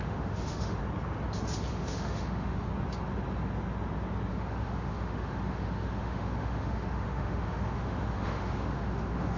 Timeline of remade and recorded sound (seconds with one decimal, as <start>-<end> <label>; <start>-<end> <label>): 0.0-0.8 remade; 0.8-1.7 recorded; 1.7-2.7 remade; 2.7-4.3 recorded; 4.3-9.4 remade

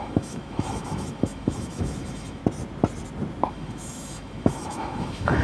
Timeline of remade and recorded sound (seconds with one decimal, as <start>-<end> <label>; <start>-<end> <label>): 0.0-2.4 remade; 2.4-3.5 recorded; 3.5-5.4 remade

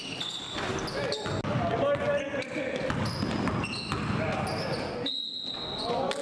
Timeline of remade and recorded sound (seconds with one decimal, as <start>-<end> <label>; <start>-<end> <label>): 0.0-6.2 recorded

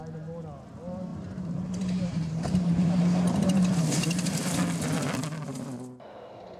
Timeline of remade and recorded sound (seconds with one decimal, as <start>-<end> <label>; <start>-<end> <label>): 0.0-1.1 recorded; 1.1-3.0 remade; 3.0-6.6 recorded

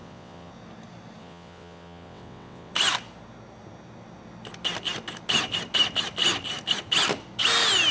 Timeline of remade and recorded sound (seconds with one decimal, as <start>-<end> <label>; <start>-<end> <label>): 0.0-0.5 remade; 0.5-1.2 recorded; 1.2-2.7 remade; 2.7-7.9 recorded

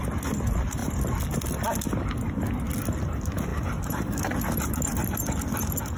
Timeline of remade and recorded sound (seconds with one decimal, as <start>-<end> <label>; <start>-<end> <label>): 0.0-3.5 recorded; 3.5-4.2 remade; 4.2-6.0 recorded

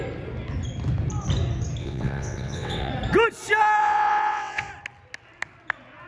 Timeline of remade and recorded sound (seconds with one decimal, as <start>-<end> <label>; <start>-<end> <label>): 0.0-1.8 recorded; 1.8-2.9 remade; 2.9-3.8 recorded; 3.8-4.7 remade; 4.7-6.1 recorded